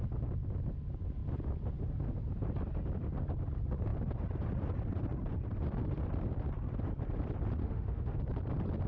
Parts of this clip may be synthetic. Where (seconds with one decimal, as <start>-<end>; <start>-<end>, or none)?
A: 7.6-8.2